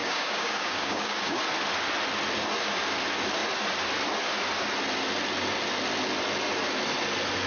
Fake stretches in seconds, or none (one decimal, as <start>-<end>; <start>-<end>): 0.0-1.4